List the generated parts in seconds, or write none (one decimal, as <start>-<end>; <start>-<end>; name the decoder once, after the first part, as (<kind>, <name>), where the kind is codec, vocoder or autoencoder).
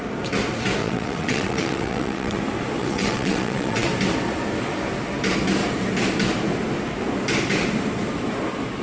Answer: 0.8-2.4 (vocoder, WaveNeXt); 2.8-3.9